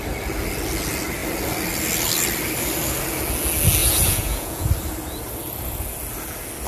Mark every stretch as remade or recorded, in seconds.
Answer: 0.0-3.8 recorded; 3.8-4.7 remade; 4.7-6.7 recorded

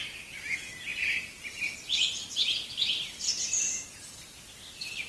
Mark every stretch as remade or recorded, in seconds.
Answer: 0.0-5.1 recorded

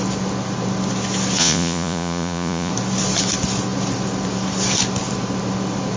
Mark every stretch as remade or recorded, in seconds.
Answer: 0.0-1.4 recorded; 1.4-2.7 remade; 2.7-6.0 recorded

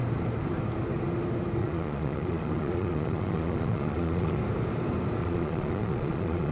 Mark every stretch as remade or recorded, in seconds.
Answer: 0.0-1.6 recorded; 1.6-4.4 remade; 4.4-5.2 recorded; 5.2-6.5 remade

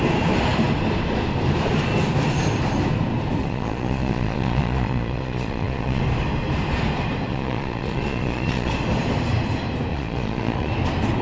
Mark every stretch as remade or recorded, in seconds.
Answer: 0.0-3.4 recorded; 3.4-6.0 remade; 6.0-7.3 recorded; 7.3-8.7 remade; 8.7-9.9 recorded; 9.9-10.7 remade; 10.7-11.2 recorded

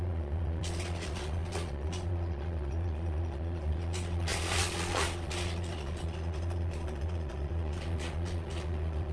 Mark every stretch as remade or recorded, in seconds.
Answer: 0.0-9.1 remade